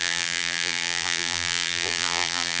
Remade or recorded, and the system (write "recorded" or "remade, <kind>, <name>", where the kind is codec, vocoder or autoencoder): remade, vocoder, BigVGAN v2